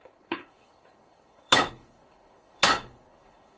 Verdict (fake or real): fake